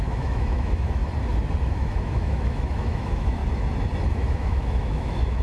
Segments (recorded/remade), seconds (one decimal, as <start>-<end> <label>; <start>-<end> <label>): 0.0-1.0 remade; 1.0-1.6 recorded; 1.6-3.4 remade; 3.4-4.1 recorded; 4.1-5.4 remade